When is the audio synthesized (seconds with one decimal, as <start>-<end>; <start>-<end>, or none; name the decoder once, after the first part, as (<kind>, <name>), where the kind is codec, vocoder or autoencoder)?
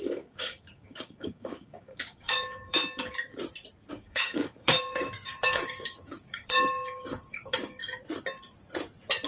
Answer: 0.0-2.8 (codec, DAC); 3.9-7.8